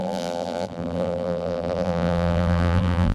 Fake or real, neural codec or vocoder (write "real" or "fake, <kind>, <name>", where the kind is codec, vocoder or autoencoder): fake, vocoder, BigVGAN v2